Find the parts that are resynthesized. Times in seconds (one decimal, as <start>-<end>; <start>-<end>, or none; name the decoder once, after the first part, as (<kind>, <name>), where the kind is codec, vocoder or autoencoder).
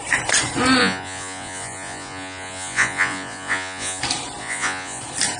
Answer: 0.8-4.0 (vocoder, Vocos); 4.4-5.0